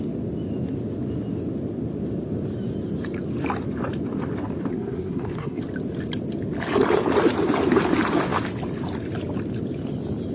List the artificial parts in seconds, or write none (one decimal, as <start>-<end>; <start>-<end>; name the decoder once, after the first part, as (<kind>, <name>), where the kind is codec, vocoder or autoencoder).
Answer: 4.7-5.6 (codec, SNAC)

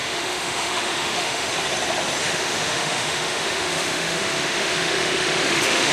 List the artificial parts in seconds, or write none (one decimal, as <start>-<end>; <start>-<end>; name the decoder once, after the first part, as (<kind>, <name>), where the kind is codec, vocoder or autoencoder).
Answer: 0.0-1.5 (autoencoder, DAC-VAE); 2.2-5.9

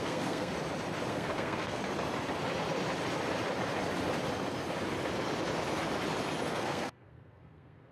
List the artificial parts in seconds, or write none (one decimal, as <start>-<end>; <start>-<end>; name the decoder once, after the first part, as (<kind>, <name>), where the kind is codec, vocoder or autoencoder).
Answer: 0.0-0.5 (codec, SNAC); 1.1-1.8; 6.5-7.9

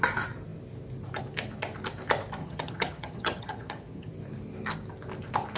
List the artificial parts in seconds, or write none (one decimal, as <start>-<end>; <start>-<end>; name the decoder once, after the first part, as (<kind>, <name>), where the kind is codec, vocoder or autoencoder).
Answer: 2.4-4.1 (vocoder, HiFi-GAN)

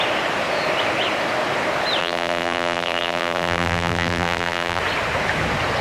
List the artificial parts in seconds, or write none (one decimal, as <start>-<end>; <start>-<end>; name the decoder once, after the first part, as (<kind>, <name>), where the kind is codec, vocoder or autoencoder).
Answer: 2.0-4.8 (vocoder, BigVGAN v2)